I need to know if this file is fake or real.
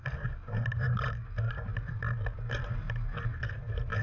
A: real